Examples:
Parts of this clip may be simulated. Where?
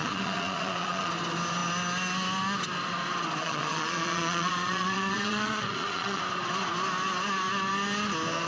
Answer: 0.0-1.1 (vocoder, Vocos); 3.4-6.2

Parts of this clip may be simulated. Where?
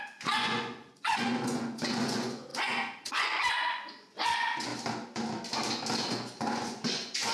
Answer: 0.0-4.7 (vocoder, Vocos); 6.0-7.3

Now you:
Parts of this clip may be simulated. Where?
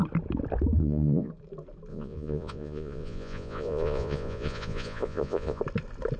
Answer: 0.8-1.3 (vocoder, Vocos); 1.9-5.6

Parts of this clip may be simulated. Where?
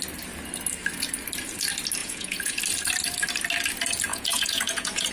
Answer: 2.0-2.6 (vocoder, Vocos); 4.1-5.1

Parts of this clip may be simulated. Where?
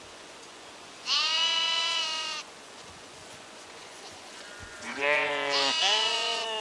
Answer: 0.0-6.6 (vocoder, Vocos)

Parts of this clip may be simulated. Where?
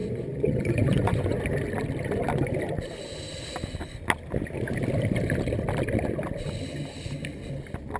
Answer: 0.0-1.4 (vocoder, Vocos)